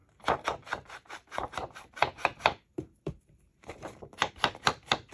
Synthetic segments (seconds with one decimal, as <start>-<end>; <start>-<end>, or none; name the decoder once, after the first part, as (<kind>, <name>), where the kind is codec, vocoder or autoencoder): 0.0-3.1 (vocoder, BigVGAN v2); 3.5-4.3